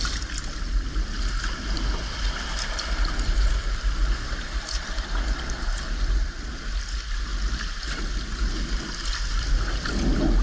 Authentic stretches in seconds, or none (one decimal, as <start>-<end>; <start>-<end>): 0.0-10.4